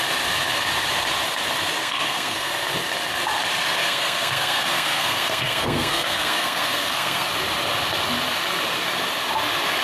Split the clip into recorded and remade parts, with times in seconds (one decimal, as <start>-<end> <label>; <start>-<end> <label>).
0.0-1.8 recorded; 1.8-2.5 remade; 2.5-3.8 recorded; 3.8-7.3 remade; 7.3-9.8 recorded

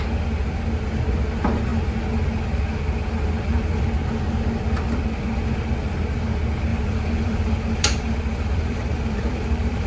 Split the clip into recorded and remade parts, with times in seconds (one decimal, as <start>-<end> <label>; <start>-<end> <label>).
0.0-6.7 recorded; 6.7-9.9 remade

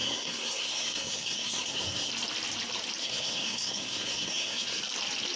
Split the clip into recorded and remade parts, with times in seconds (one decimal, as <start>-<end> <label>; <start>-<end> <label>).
0.0-2.1 remade; 2.1-3.0 recorded; 3.0-4.8 remade; 4.8-5.4 recorded

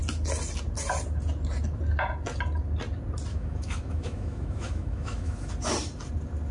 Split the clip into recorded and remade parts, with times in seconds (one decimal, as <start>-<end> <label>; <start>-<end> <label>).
0.0-3.3 recorded; 3.3-5.5 remade; 5.5-6.5 recorded